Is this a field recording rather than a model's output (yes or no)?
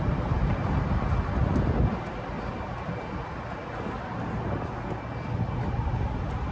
yes